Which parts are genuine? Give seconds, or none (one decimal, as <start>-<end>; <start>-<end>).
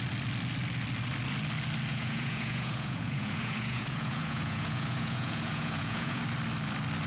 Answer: 0.0-1.9; 6.2-7.1